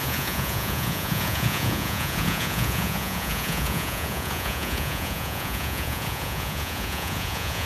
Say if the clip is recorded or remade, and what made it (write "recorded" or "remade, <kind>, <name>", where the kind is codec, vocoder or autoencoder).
remade, vocoder, Vocos